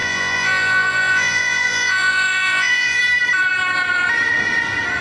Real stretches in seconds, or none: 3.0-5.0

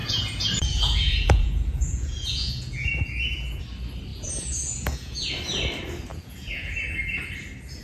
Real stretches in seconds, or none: 3.6-4.1; 5.3-6.1; 6.7-7.8

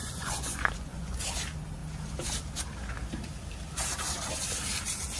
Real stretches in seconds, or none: 1.2-5.2

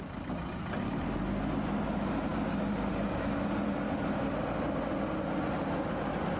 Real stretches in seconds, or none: 0.0-6.4